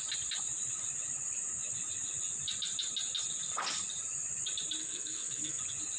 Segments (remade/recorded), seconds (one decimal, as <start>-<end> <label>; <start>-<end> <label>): 0.0-4.8 recorded; 4.8-5.6 remade; 5.6-6.0 recorded